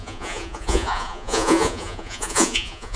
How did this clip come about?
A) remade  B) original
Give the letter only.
A